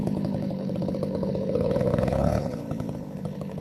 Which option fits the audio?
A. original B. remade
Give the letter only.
B